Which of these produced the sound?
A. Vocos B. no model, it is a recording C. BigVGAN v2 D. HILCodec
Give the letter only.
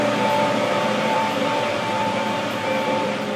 C